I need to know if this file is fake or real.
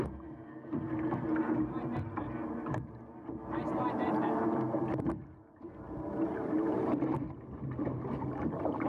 fake